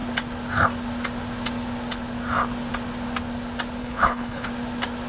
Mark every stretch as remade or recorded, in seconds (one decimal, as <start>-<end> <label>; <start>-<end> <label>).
0.0-3.8 recorded; 3.8-4.5 remade; 4.5-5.1 recorded